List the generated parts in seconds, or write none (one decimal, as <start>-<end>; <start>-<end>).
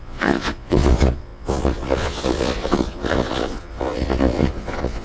0.0-5.0